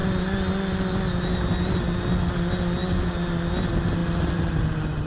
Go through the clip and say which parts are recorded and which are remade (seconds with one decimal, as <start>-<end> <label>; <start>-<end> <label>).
0.0-5.1 recorded